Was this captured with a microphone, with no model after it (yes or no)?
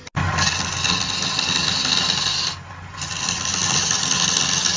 yes